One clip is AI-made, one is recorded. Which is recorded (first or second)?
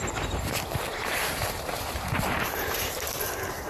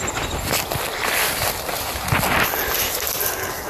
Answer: second